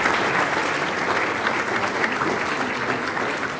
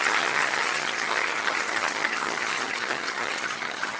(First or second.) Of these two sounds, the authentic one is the first